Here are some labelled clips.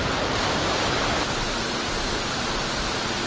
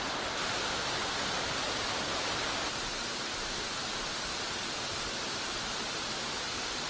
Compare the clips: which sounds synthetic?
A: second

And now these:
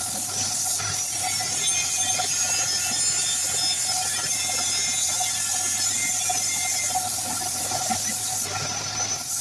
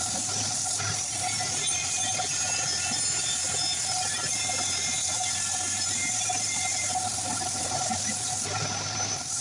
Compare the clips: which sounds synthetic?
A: second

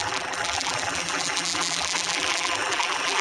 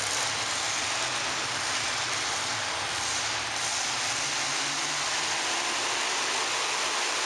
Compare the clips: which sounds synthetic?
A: first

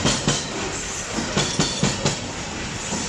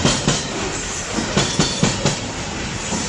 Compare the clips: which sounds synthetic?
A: second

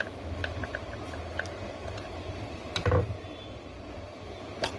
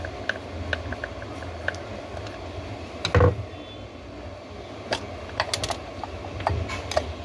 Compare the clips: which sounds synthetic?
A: first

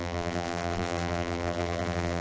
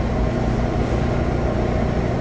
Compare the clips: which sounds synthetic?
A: first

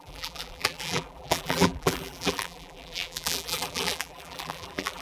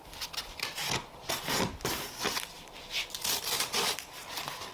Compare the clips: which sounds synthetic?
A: first